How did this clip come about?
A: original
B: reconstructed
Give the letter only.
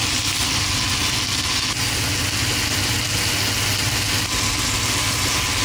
A